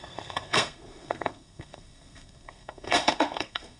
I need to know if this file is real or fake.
fake